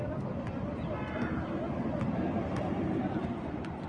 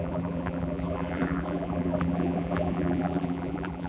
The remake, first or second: second